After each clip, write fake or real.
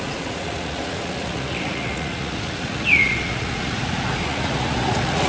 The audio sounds fake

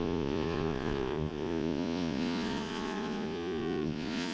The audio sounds fake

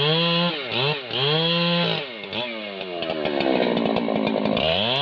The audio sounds real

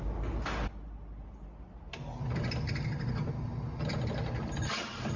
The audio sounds real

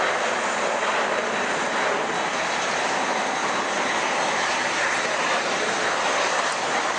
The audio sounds real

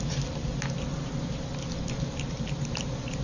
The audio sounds real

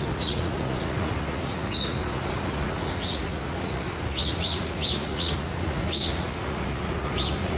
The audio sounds fake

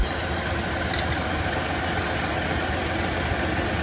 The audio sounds real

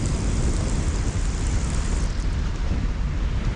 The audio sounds real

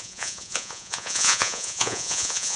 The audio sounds fake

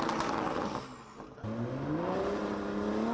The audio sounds real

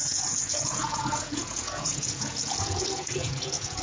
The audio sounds fake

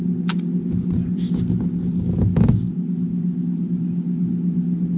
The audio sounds real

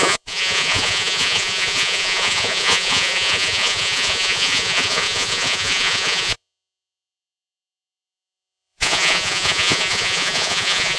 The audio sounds fake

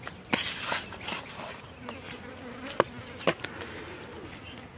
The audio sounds real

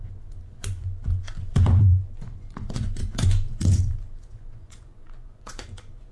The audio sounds fake